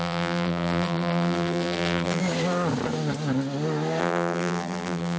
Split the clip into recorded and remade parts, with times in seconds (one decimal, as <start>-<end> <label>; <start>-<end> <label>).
0.0-2.2 remade; 2.2-4.0 recorded; 4.0-5.2 remade